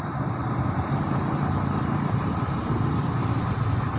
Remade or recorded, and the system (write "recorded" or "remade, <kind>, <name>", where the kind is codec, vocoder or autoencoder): remade, vocoder, BigVGAN v2